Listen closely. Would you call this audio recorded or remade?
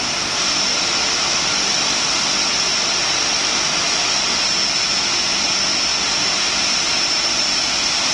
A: recorded